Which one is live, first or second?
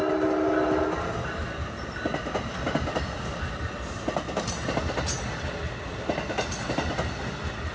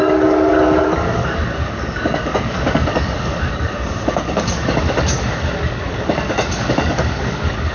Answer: first